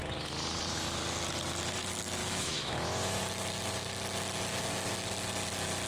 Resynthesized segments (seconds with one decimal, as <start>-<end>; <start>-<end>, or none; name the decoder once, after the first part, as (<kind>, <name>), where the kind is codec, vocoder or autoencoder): 2.2-3.2 (autoencoder, DAC-VAE)